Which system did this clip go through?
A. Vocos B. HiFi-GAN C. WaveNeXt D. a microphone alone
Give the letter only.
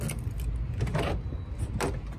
D